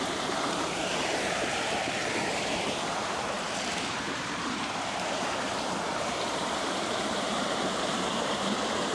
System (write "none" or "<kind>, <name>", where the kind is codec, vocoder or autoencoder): vocoder, BigVGAN v2